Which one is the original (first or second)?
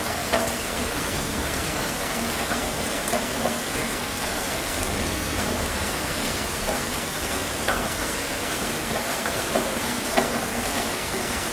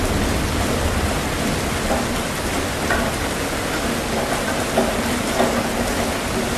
second